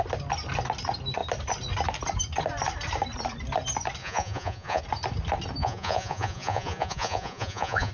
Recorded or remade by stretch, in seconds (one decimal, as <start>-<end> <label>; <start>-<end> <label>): 0.0-4.0 recorded; 4.0-4.8 remade; 4.8-5.6 recorded; 5.6-7.9 remade